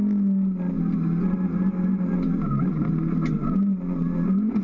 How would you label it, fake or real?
real